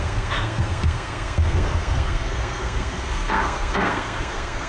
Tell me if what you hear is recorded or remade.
remade